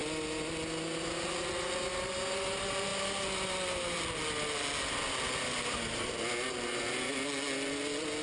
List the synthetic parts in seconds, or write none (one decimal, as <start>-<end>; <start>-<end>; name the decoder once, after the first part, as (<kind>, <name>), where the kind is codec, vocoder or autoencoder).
none